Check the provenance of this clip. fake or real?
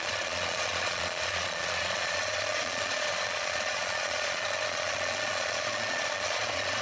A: fake